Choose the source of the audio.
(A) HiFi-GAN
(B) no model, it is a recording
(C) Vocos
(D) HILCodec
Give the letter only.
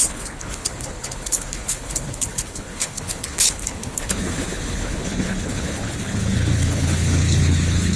D